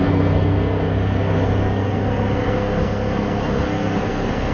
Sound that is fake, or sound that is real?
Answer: fake